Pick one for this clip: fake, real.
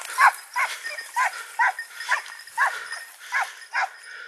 real